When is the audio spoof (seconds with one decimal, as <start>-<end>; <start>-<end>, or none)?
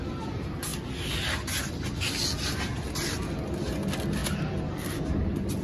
none